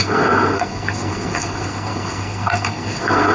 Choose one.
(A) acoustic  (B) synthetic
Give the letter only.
B